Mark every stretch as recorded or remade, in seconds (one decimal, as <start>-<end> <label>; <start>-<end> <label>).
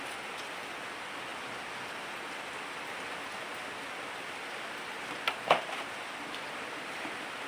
0.0-7.5 recorded